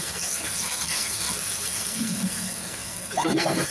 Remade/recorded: remade